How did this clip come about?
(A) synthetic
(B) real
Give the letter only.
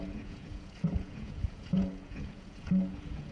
A